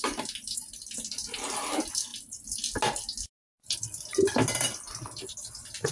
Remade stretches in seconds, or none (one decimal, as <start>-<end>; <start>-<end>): none